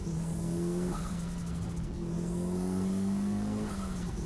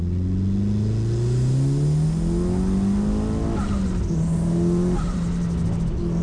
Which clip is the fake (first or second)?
first